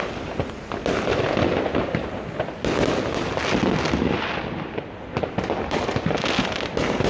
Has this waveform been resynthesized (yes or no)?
no